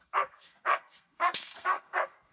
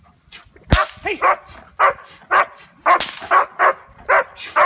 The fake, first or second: first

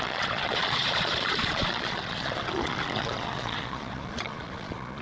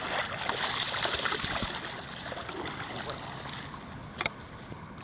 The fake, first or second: first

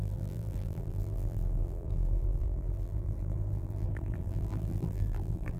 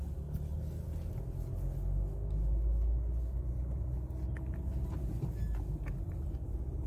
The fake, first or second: first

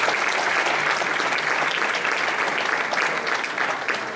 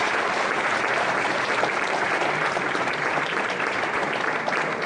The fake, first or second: second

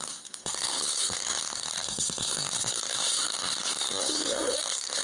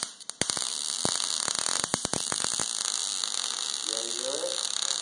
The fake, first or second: first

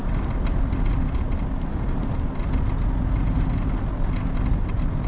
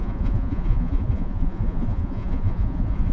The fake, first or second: second